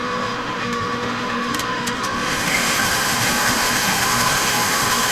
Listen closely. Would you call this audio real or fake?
fake